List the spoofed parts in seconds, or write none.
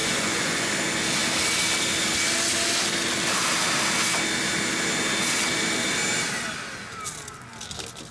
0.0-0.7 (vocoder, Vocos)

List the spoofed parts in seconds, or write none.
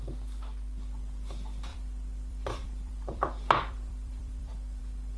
1.7-4.8 (vocoder, BigVGAN v2)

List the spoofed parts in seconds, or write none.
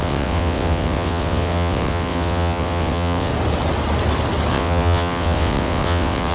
0.0-3.3 (vocoder, WaveNeXt); 4.5-6.3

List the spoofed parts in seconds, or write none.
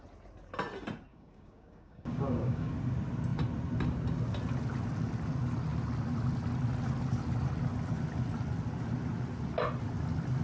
1.1-2.7 (codec, DAC)